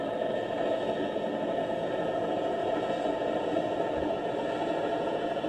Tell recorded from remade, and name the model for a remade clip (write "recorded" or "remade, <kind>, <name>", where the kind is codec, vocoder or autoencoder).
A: remade, vocoder, Vocos